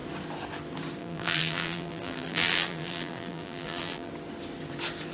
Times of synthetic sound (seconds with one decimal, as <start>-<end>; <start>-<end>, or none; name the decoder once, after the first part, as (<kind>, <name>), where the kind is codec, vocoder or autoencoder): 1.0-4.1 (vocoder, BigVGAN v2)